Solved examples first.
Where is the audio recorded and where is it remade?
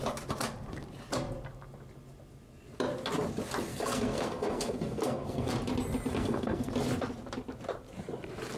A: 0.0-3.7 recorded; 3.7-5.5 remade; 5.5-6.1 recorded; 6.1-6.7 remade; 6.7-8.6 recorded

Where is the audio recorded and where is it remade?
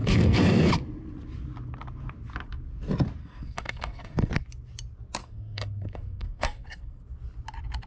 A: 0.0-0.7 remade; 0.7-3.2 recorded; 3.2-4.3 remade; 4.3-5.2 recorded; 5.2-7.0 remade; 7.0-7.9 recorded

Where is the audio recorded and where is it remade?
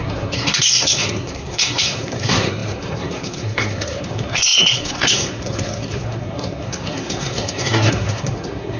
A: 0.0-8.8 remade